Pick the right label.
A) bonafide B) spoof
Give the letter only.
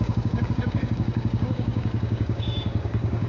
B